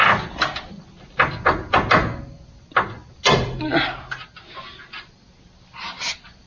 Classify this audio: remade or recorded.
recorded